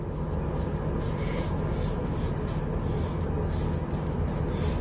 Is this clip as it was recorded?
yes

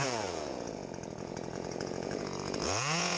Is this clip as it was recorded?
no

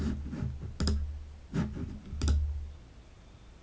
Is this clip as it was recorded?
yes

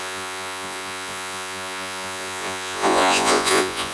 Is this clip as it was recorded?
no